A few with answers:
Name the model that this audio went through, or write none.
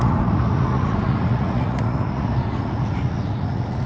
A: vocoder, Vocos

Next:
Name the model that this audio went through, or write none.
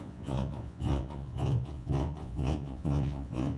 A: vocoder, Vocos